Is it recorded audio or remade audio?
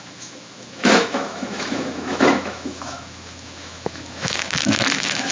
remade